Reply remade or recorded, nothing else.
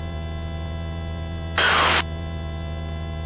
recorded